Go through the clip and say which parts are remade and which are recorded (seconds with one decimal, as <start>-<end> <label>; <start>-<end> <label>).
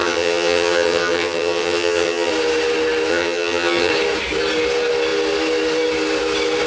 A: 0.0-2.3 remade; 2.3-3.1 recorded; 3.1-3.9 remade; 3.9-6.7 recorded